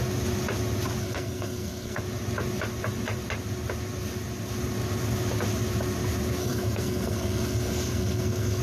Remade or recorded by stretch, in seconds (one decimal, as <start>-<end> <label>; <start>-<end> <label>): 0.0-1.0 recorded; 1.0-2.0 remade; 2.0-6.4 recorded; 6.4-8.6 remade